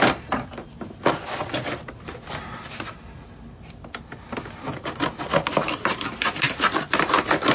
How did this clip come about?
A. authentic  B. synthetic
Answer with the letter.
A